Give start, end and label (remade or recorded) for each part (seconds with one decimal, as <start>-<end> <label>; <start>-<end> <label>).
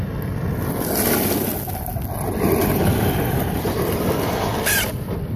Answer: 0.0-5.4 recorded